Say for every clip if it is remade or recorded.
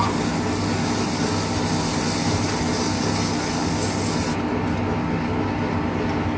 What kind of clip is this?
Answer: recorded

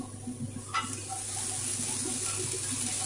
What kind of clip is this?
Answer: recorded